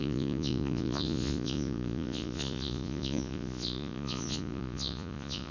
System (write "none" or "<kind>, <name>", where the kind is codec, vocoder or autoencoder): vocoder, Vocos